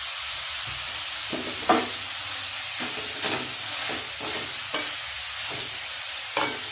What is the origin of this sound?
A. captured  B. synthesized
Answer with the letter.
A